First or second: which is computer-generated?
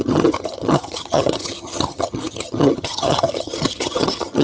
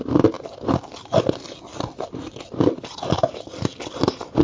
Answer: first